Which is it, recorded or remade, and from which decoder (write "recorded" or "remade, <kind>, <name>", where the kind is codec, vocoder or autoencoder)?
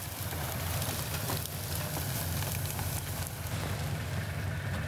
recorded